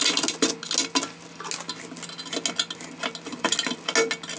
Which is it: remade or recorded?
recorded